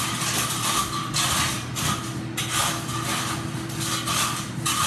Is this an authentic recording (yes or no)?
yes